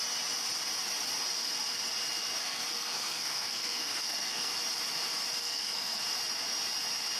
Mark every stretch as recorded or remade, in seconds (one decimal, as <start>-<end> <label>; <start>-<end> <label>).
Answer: 0.0-2.4 recorded; 2.4-4.5 remade; 4.5-5.4 recorded; 5.4-6.0 remade; 6.0-7.2 recorded